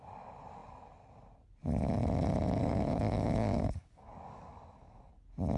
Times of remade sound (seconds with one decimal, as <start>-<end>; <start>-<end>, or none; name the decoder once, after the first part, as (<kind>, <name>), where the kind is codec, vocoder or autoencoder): 2.6-5.1 (codec, DAC)

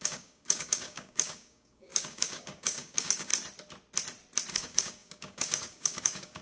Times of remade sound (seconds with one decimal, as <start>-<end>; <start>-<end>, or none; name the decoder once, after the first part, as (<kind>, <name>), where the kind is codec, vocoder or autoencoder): 0.0-3.3 (codec, DAC); 4.5-6.4

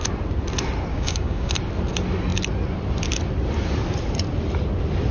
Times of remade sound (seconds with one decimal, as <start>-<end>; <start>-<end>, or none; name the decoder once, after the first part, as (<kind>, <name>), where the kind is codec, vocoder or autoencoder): 0.9-1.5 (codec, DAC)

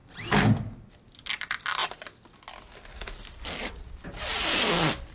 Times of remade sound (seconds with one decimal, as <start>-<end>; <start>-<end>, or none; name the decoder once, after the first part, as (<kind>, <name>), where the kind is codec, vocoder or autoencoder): none

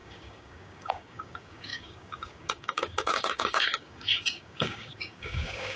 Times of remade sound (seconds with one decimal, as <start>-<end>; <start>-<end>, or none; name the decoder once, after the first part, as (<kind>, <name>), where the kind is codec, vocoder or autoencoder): 0.0-5.8 (codec, DAC)

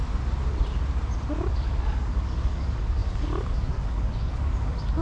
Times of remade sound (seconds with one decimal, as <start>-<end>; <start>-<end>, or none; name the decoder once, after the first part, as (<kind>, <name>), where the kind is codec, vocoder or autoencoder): 1.5-5.0 (codec, DAC)

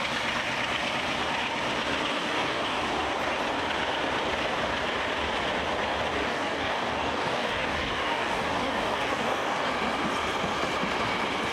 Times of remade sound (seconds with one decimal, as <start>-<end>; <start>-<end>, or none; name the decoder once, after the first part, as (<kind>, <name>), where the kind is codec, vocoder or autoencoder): 2.1-2.8 (codec, DAC); 6.2-9.7

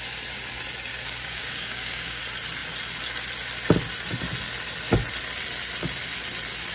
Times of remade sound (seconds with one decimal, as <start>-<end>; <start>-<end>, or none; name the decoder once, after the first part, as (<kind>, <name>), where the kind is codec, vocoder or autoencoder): 0.9-2.2 (codec, DAC)